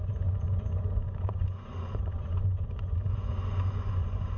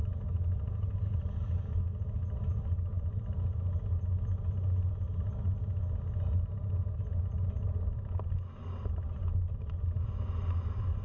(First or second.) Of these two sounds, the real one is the second